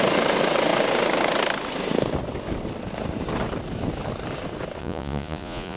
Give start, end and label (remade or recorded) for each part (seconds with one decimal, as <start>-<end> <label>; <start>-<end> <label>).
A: 0.0-4.8 recorded; 4.8-5.8 remade